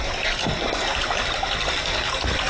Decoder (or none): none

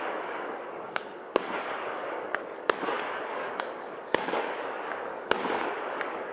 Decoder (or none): codec, DAC